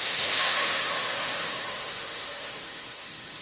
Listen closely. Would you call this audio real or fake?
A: fake